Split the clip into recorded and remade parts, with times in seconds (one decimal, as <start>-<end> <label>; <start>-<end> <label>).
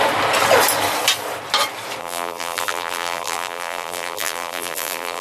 0.0-2.0 recorded; 2.0-5.2 remade